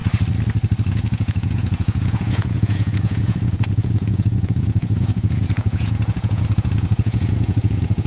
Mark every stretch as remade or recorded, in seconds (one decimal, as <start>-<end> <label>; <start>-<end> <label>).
0.0-0.9 recorded; 0.9-8.1 remade